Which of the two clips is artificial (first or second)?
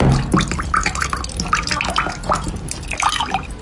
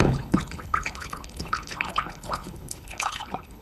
second